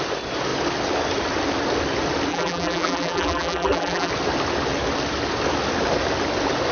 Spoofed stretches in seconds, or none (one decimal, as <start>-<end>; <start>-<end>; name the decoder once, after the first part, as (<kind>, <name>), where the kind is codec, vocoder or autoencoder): 2.3-4.1 (vocoder, BigVGAN v2)